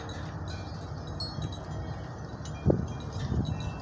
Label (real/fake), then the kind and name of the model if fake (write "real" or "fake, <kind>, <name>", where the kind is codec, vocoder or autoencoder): real